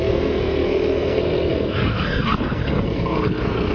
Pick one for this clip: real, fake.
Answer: fake